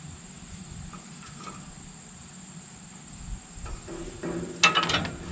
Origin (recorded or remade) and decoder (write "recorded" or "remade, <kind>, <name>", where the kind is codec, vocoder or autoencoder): recorded